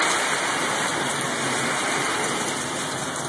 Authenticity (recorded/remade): recorded